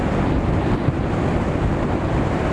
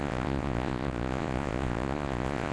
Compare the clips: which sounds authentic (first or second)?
first